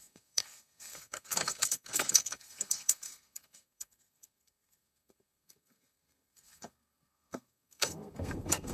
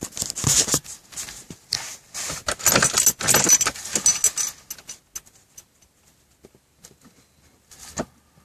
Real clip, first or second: second